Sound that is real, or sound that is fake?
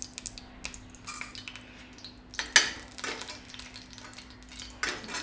real